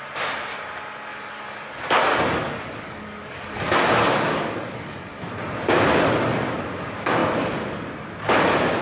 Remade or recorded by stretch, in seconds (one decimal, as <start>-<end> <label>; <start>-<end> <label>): 0.0-1.1 recorded; 1.1-5.3 remade; 5.3-8.8 recorded